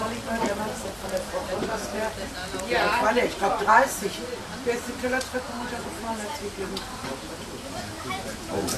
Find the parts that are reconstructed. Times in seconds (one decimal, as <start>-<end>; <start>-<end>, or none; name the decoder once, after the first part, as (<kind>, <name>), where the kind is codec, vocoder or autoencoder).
0.0-2.3 (vocoder, BigVGAN v2); 3.4-6.0

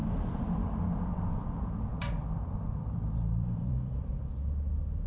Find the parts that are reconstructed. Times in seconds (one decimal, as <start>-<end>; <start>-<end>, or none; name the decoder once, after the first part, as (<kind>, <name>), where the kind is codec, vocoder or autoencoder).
0.0-5.1 (vocoder, BigVGAN v2)